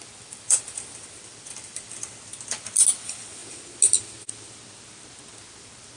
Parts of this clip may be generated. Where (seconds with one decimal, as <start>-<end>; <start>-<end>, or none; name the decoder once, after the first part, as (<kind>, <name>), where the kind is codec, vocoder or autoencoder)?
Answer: 0.0-2.3 (vocoder, BigVGAN v2); 2.9-3.4; 5.6-6.0